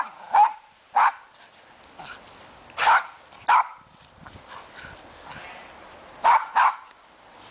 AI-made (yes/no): no